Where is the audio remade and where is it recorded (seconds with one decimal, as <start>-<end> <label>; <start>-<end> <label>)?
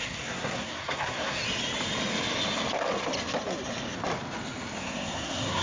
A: 0.0-1.4 remade; 1.4-4.8 recorded; 4.8-5.6 remade